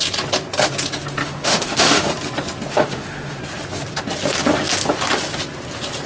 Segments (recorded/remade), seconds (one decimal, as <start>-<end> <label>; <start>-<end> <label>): 0.0-1.2 recorded; 1.2-2.1 remade; 2.1-2.7 recorded; 2.7-3.4 remade; 3.4-6.1 recorded